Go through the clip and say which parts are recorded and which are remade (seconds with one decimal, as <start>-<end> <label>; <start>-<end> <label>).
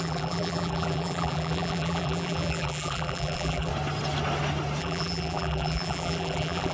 0.0-3.7 remade; 3.7-4.8 recorded; 4.8-6.7 remade